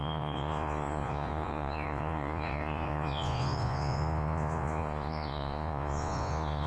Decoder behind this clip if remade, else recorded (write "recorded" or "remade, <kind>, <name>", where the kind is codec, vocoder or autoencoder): remade, vocoder, Vocos